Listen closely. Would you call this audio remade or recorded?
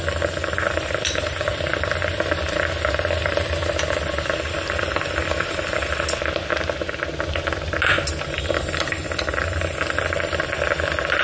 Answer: remade